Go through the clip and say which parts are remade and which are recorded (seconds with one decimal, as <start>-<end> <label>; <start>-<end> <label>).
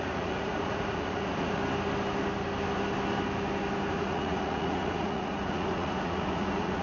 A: 0.0-1.6 remade; 1.6-3.9 recorded; 3.9-6.8 remade